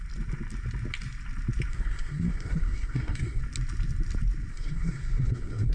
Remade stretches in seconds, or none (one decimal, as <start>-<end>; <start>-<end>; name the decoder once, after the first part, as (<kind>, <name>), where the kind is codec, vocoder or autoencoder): 1.7-3.4 (codec, SNAC); 4.5-5.7